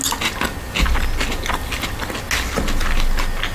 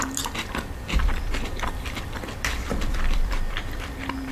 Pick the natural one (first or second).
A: first